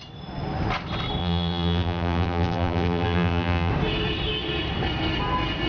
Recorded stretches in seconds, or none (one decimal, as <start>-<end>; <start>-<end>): 0.0-1.2; 3.7-5.7